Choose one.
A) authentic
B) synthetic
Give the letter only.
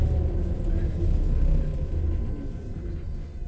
A